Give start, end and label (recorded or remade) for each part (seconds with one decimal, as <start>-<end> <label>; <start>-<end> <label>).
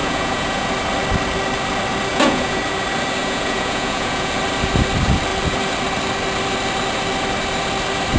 0.0-0.7 remade; 0.7-2.1 recorded; 2.1-2.6 remade; 2.6-3.2 recorded; 3.2-4.3 remade; 4.3-8.2 recorded